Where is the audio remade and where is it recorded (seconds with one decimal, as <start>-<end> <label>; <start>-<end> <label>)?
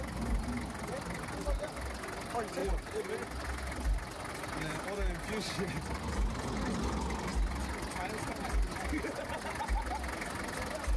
0.0-11.0 recorded